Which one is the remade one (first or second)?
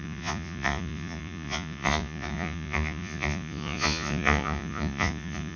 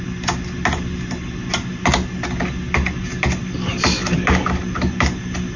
first